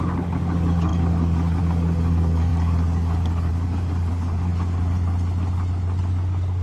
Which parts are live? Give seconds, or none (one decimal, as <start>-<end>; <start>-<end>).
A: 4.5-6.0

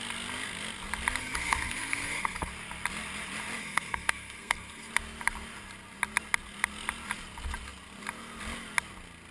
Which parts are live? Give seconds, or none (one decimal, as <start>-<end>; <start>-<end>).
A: 0.0-1.2; 2.5-3.6; 4.9-9.3

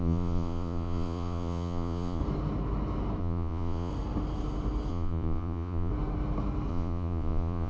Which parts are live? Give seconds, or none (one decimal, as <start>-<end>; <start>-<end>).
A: 2.2-3.2; 3.9-4.9; 5.9-6.7